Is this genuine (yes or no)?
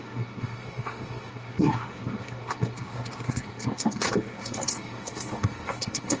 no